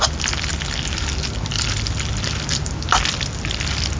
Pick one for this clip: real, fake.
real